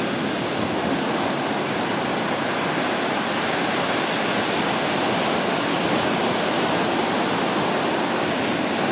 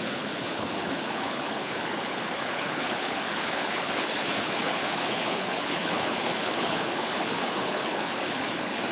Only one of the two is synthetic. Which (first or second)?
second